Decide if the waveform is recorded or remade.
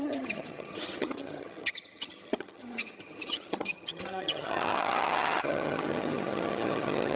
remade